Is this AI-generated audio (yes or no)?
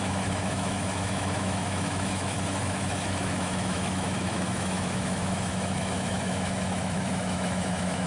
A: yes